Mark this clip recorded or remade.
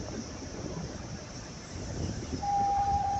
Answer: remade